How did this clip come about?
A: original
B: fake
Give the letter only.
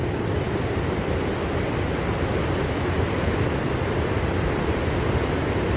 A